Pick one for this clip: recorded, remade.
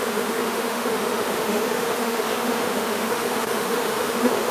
remade